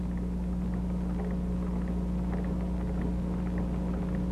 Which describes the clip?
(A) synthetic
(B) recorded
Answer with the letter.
B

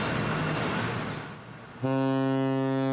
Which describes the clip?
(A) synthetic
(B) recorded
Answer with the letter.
B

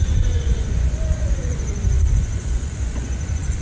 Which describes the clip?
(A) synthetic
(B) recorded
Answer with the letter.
A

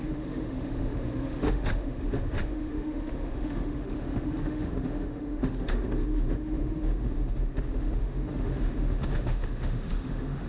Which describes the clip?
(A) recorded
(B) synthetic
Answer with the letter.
B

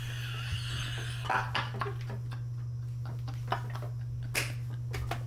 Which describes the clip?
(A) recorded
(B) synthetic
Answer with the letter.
A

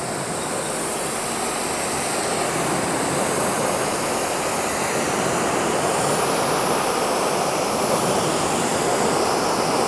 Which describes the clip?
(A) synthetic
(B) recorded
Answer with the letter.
B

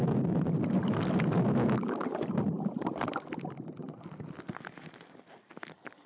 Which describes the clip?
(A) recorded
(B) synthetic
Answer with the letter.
A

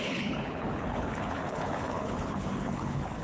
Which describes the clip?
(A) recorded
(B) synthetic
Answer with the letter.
B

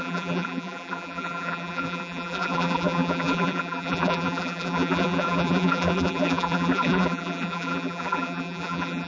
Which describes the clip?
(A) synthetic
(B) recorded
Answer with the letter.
A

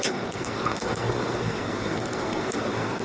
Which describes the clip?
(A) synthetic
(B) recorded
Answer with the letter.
A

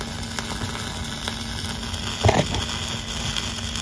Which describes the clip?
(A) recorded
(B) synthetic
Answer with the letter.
A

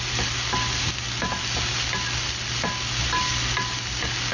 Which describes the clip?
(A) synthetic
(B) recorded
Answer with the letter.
B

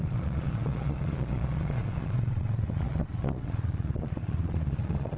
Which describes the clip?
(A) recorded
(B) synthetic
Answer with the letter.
B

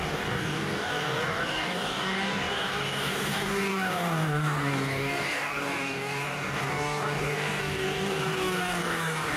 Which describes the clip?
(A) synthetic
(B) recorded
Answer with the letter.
A